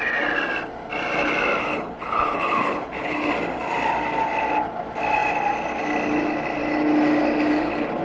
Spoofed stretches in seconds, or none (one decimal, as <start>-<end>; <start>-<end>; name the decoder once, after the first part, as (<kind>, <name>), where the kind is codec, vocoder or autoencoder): 1.6-3.3 (codec, HILCodec)